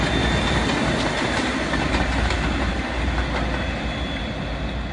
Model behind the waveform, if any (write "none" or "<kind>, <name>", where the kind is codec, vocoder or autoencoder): none